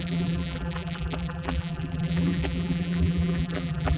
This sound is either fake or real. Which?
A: fake